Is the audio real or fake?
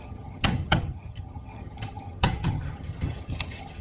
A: fake